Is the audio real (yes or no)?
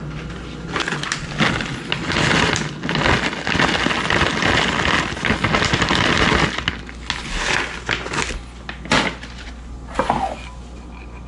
yes